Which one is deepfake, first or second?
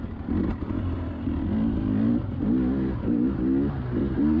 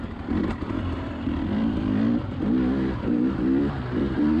second